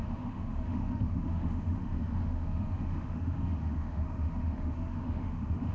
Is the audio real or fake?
fake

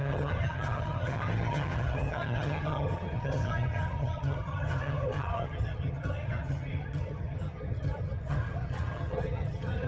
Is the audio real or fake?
fake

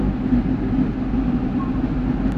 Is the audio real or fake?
real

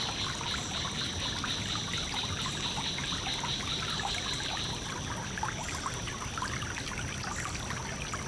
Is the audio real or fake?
real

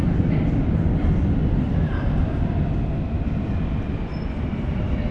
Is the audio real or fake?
fake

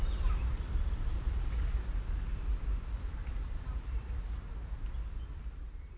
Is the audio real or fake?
real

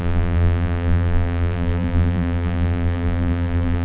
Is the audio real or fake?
fake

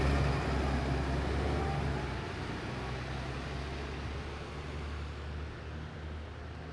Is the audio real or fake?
real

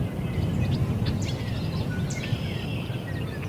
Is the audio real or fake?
real